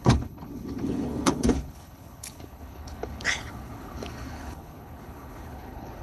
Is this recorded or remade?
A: remade